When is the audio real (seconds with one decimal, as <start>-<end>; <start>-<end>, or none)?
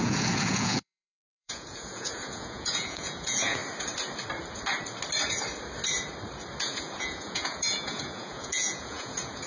3.6-6.6